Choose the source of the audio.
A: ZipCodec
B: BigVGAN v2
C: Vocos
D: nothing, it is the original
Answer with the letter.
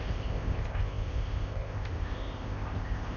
A